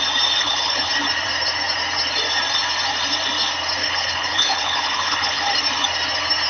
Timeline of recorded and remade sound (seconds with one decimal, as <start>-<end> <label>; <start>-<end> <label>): 0.0-0.4 recorded; 0.4-0.9 remade; 0.9-3.8 recorded; 3.8-5.4 remade; 5.4-6.5 recorded